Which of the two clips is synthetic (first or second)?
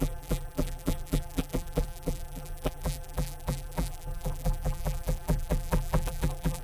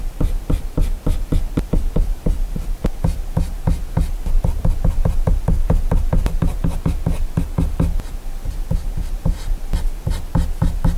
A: first